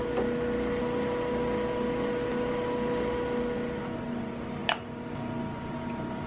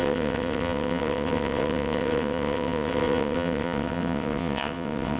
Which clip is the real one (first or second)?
first